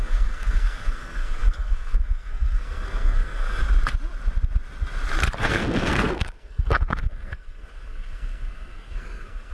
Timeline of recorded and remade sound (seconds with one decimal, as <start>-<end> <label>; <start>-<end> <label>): 0.0-3.6 remade; 3.6-5.4 recorded; 5.4-9.5 remade